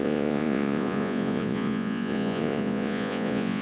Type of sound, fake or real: fake